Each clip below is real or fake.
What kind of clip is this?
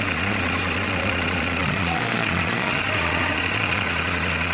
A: fake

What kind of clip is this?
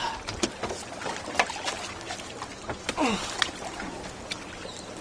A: real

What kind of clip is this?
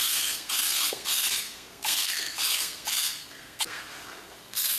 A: fake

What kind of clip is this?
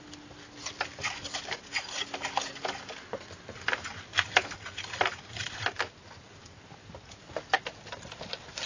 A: real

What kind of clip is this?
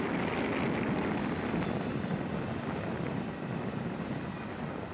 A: real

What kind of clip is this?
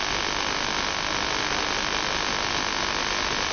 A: real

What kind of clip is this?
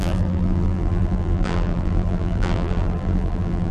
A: fake